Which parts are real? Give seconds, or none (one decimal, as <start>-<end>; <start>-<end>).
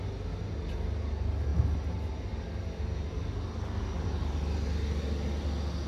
0.0-5.9